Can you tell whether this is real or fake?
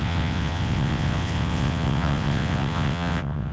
fake